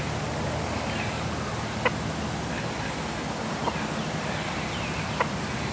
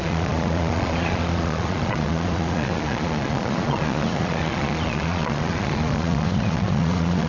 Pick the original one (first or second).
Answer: first